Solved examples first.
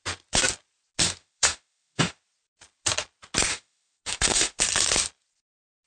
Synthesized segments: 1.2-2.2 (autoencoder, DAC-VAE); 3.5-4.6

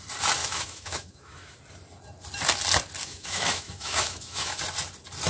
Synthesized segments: 0.4-1.6 (autoencoder, DAC-VAE); 3.0-4.6

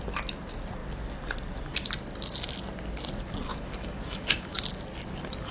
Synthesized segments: 3.5-4.6 (autoencoder, DAC-VAE)

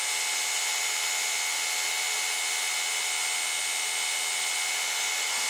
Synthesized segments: none

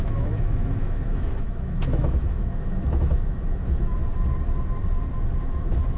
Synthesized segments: 0.0-4.0 (autoencoder, DAC-VAE); 5.4-6.0

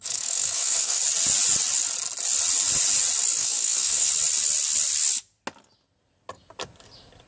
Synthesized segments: 0.0-1.0 (autoencoder, DAC-VAE); 3.4-4.1